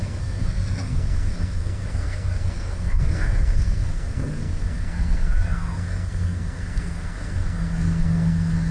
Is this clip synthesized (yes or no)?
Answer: yes